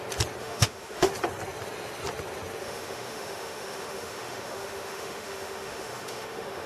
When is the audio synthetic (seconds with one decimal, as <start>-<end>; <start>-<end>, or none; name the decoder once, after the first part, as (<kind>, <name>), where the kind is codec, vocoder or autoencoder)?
0.4-1.1 (autoencoder, DAC-VAE); 2.6-6.7